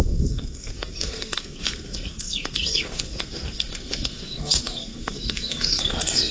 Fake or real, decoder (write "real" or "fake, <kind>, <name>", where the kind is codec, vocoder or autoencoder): fake, codec, SNAC